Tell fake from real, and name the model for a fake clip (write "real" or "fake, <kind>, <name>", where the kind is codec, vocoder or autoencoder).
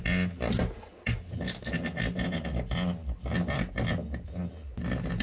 real